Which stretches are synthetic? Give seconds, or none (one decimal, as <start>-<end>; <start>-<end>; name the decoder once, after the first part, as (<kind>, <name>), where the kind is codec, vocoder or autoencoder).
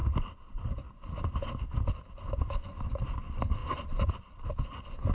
3.6-4.1 (vocoder, BigVGAN v2)